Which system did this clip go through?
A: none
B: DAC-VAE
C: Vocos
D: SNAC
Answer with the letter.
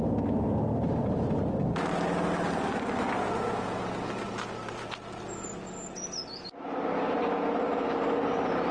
A